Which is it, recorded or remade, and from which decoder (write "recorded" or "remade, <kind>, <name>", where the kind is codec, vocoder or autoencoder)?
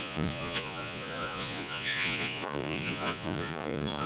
remade, vocoder, Vocos